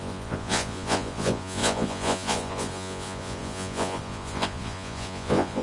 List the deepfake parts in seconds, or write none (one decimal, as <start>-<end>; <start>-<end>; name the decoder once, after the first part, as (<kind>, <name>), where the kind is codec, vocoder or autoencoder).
0.0-5.6 (vocoder, Vocos)